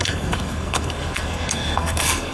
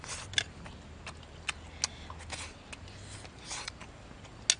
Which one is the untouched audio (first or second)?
second